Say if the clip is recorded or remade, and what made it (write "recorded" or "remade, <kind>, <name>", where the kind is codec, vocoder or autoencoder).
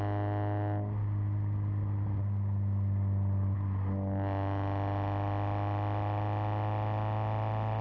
recorded